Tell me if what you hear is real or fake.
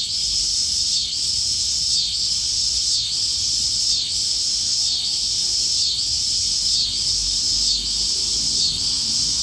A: fake